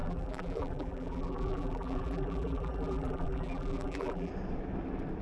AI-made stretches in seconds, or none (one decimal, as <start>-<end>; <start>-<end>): 0.0-4.3